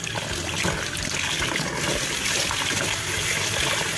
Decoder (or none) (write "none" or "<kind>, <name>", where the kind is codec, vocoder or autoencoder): none